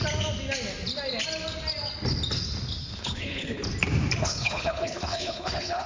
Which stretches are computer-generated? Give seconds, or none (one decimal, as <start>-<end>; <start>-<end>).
2.8-3.6; 4.2-5.9